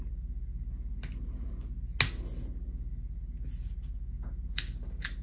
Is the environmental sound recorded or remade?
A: recorded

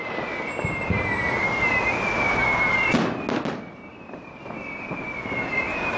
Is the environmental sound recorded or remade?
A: recorded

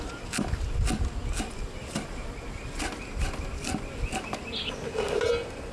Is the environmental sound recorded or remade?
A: recorded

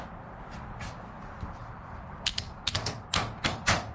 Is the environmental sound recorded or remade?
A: recorded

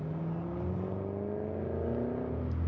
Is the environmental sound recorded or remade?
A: recorded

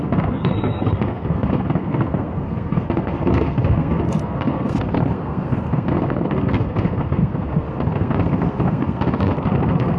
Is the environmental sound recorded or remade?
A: remade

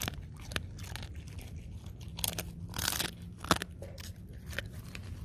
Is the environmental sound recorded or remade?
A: recorded